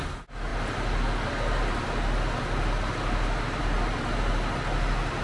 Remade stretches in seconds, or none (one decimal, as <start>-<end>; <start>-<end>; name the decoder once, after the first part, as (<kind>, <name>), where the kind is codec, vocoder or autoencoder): none